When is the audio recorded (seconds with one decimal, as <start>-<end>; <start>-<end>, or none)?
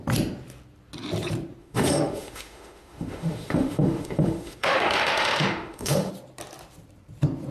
0.0-1.6; 6.1-7.5